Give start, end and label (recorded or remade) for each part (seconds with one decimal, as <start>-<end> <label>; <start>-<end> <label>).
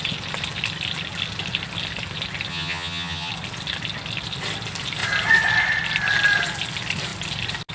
0.0-2.5 recorded; 2.5-3.3 remade; 3.3-7.7 recorded